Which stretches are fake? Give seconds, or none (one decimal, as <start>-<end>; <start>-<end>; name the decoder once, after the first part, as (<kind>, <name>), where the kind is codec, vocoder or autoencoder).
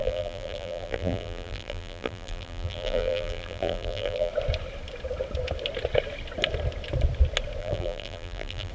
0.0-4.3 (vocoder, BigVGAN v2); 7.6-8.7